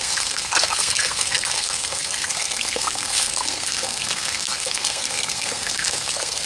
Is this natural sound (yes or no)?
no